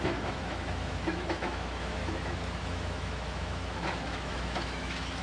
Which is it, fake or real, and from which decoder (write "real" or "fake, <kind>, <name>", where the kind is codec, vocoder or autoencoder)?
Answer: fake, autoencoder, DAC-VAE